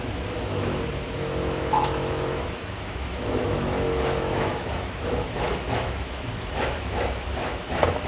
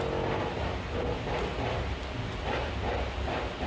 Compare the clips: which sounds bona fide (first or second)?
second